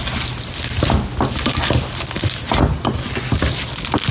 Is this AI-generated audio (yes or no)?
no